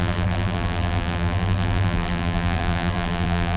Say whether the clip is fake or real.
fake